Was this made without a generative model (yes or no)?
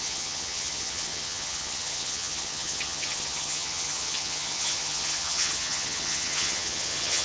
no